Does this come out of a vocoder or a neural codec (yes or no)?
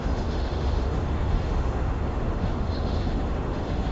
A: yes